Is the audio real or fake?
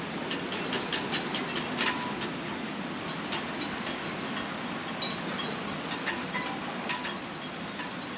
real